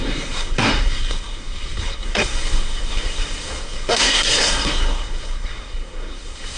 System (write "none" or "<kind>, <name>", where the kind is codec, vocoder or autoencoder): codec, SNAC